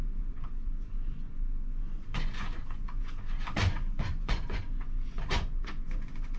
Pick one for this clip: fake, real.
fake